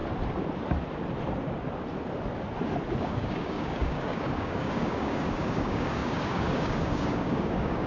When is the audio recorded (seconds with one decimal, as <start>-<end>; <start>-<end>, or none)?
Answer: 0.0-3.0